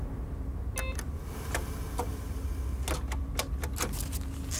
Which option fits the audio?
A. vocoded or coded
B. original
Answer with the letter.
B